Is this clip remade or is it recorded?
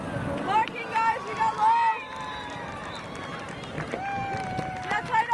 recorded